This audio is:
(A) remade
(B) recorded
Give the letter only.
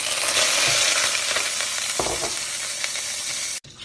B